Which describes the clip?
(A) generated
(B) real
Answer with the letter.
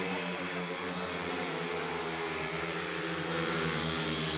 A